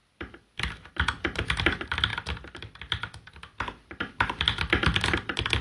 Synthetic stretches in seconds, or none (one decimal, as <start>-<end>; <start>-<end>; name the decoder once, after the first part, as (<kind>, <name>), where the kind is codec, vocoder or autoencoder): none